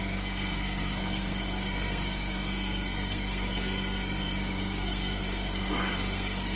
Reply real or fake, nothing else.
fake